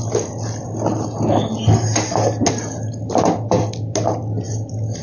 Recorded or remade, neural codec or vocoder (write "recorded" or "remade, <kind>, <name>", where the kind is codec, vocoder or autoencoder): recorded